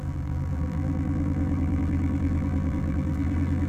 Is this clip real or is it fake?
fake